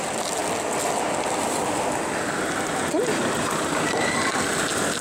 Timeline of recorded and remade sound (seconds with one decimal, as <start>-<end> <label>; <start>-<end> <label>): 0.0-5.0 recorded